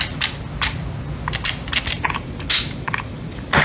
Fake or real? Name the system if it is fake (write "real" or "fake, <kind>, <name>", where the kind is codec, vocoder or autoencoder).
real